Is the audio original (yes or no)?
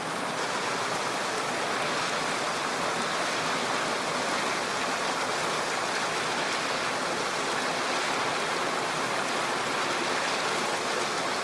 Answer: yes